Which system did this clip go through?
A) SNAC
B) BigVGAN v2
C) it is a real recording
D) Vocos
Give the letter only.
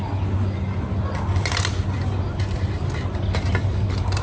C